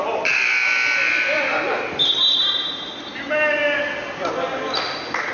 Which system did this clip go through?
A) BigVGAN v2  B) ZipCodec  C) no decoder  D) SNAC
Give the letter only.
C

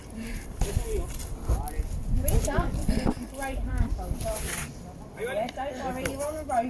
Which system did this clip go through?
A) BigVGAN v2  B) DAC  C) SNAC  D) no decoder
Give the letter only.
D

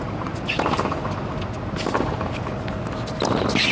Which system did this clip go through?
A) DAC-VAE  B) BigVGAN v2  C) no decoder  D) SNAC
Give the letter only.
C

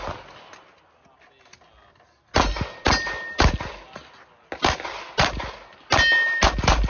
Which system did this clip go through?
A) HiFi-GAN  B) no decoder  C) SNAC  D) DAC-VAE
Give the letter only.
B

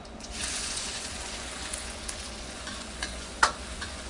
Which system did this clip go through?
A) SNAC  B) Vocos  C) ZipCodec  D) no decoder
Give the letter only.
B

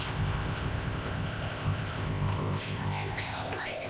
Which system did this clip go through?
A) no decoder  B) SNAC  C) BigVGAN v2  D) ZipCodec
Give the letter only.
D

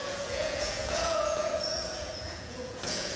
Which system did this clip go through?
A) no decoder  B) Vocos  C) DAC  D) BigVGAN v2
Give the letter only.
B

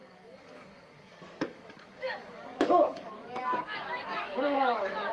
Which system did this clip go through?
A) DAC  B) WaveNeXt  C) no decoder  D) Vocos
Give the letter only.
A